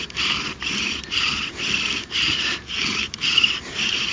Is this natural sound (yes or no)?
no